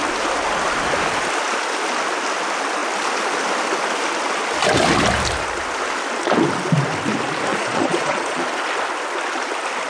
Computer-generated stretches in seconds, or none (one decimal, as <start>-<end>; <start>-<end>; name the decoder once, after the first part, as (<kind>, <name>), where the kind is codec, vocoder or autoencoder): 7.5-8.4 (vocoder, Vocos)